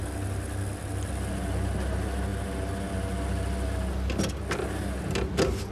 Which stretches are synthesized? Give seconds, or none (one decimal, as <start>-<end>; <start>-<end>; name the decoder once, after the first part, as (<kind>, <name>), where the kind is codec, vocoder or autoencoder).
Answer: none